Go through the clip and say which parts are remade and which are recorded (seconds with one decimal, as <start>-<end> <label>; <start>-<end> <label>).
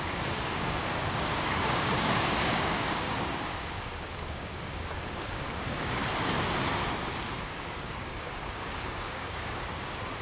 0.0-6.0 remade; 6.0-7.3 recorded; 7.3-10.2 remade